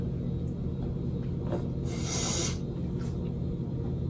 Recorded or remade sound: recorded